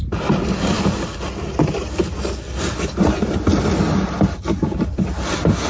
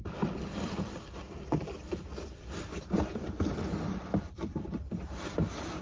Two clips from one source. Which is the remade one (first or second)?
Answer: second